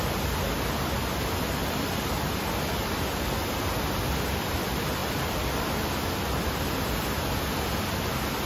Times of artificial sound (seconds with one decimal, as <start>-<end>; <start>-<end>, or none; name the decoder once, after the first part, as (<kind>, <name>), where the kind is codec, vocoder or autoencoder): 1.6-2.2 (vocoder, BigVGAN v2); 5.0-5.8